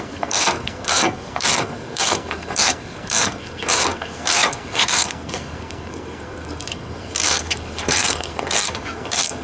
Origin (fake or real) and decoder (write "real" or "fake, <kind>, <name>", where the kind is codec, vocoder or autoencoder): fake, codec, SNAC